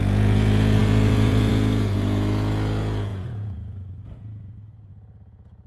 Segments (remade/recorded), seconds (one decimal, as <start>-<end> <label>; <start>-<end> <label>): 0.0-5.7 remade